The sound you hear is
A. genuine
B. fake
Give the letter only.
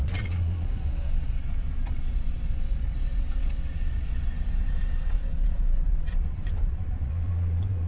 B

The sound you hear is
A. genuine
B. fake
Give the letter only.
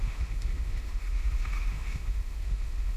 B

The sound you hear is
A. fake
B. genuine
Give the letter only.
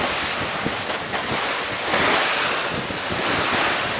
B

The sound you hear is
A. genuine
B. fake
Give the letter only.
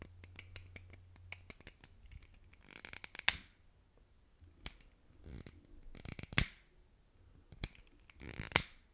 A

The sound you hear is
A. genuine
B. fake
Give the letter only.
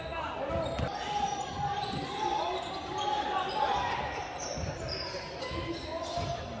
A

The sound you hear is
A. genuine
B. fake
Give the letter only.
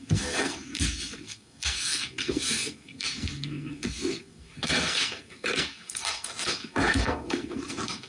B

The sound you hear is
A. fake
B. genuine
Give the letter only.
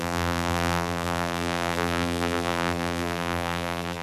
A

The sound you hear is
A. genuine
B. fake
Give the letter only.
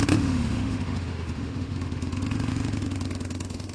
B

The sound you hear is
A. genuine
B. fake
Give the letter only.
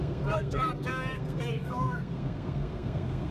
B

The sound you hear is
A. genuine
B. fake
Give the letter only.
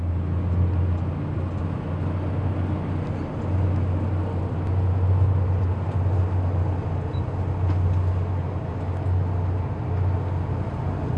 A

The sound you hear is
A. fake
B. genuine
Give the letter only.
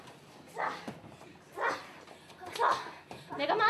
B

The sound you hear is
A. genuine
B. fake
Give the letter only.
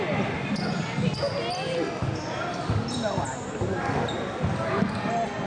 A